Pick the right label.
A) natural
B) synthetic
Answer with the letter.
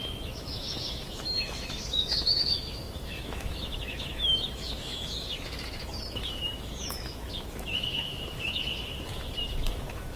B